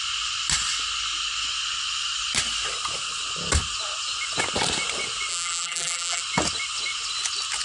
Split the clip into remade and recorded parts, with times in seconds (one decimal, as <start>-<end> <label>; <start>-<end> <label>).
0.0-5.3 recorded; 5.3-6.2 remade; 6.2-7.6 recorded